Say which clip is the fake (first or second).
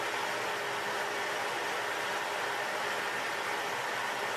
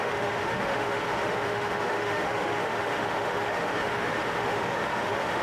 second